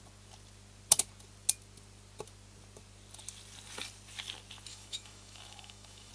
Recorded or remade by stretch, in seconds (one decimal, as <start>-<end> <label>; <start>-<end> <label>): 0.0-4.7 recorded; 4.7-6.1 remade